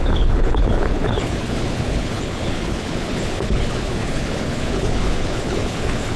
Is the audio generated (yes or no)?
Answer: yes